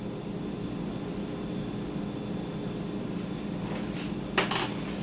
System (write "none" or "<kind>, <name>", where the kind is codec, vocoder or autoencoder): none